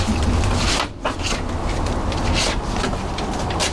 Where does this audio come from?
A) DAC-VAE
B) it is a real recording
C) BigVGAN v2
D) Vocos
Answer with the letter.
B